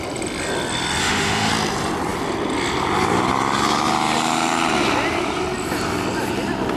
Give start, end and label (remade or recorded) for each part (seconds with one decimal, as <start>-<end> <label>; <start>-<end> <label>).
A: 0.0-1.0 recorded; 1.0-1.5 remade; 1.5-6.8 recorded